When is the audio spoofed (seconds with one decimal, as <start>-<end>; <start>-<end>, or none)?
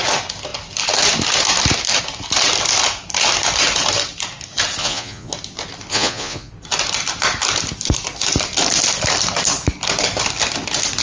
4.8-5.3; 5.9-6.5